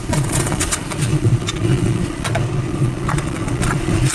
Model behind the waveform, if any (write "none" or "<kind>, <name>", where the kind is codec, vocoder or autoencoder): vocoder, Vocos